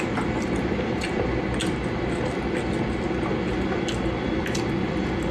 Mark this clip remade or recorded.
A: recorded